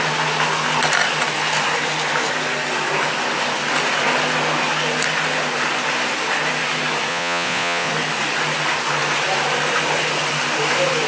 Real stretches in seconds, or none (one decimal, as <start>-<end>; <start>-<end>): 0.0-7.1; 7.9-11.1